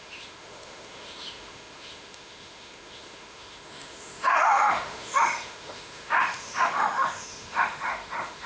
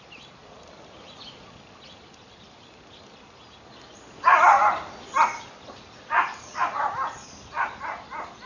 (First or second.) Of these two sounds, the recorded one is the second